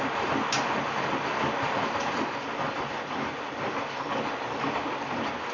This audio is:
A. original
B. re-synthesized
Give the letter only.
A